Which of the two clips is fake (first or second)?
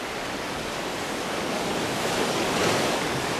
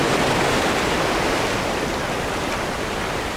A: first